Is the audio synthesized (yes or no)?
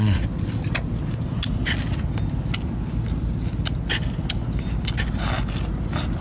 no